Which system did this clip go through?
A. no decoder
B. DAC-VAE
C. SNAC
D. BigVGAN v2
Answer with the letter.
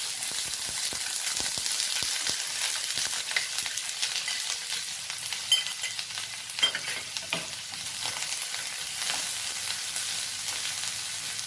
A